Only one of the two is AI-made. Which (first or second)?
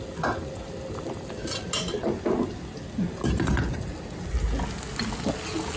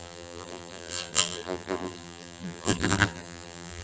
second